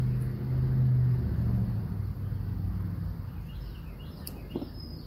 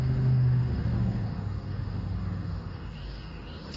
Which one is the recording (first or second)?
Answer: first